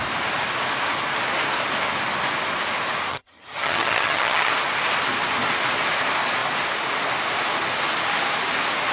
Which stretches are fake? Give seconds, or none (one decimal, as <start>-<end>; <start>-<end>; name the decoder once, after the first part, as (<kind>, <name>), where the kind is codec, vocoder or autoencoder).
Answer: 3.1-4.5 (vocoder, HiFi-GAN)